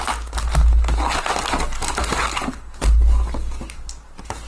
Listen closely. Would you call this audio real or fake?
real